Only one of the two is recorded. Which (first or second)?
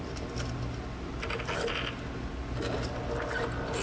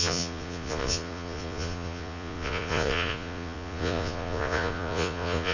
first